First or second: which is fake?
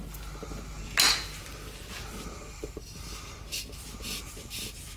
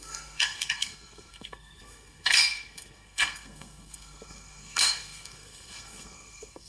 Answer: second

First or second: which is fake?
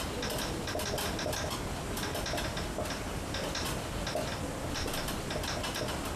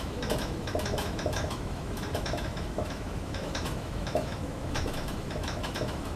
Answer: second